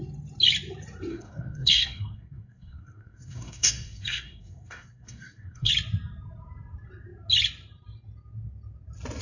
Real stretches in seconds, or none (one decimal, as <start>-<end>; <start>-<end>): 0.0-1.1; 5.7-9.2